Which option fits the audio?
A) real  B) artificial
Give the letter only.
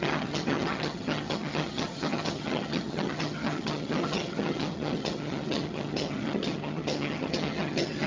B